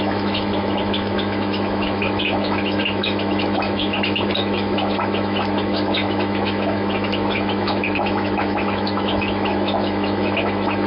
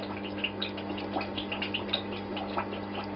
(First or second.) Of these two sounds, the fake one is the first